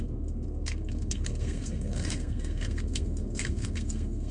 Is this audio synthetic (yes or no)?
yes